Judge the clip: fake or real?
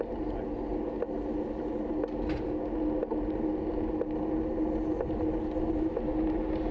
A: real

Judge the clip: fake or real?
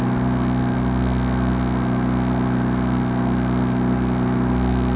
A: real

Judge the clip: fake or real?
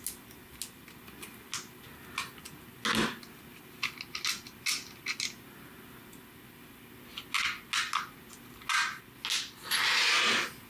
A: real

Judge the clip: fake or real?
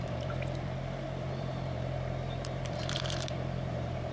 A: fake